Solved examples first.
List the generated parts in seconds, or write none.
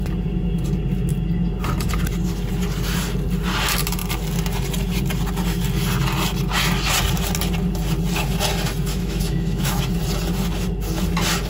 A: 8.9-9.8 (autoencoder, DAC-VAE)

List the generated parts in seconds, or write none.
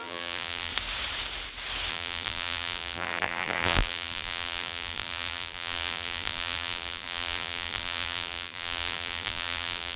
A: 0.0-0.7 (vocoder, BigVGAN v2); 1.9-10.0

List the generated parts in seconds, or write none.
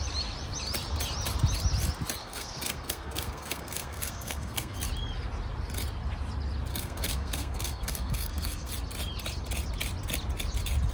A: 2.2-4.8 (codec, SNAC); 6.7-8.7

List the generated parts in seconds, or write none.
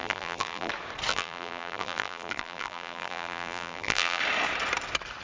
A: 0.0-0.7 (vocoder, BigVGAN v2); 1.1-4.2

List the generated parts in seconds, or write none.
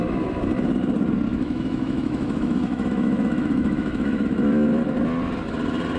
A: 1.3-4.8 (autoencoder, DAC-VAE)